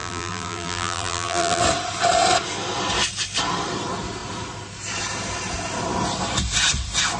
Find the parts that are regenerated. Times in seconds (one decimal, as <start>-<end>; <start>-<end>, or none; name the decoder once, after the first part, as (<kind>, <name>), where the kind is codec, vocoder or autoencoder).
0.0-1.6 (vocoder, BigVGAN v2)